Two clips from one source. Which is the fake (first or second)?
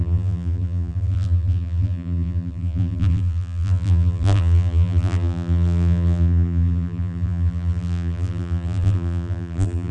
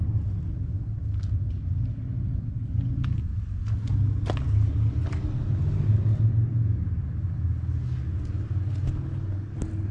first